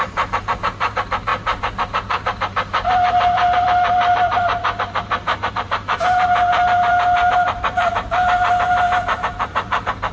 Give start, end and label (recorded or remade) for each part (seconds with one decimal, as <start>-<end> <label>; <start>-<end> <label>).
0.0-10.1 remade